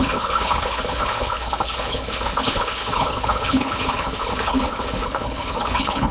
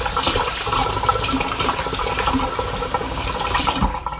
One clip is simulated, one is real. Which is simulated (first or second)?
first